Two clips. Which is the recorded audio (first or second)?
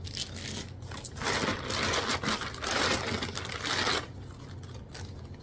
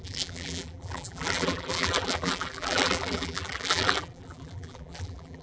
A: first